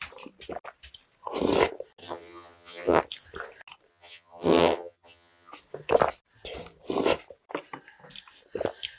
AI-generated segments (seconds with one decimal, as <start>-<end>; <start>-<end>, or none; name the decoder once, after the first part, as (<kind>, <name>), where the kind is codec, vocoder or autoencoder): 2.0-3.0 (vocoder, HiFi-GAN); 3.9-5.5